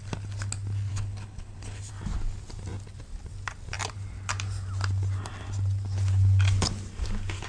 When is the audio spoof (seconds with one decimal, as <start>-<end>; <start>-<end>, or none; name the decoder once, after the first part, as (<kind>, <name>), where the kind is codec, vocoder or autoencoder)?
0.9-1.9 (codec, HILCodec)